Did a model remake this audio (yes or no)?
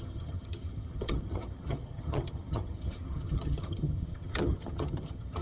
yes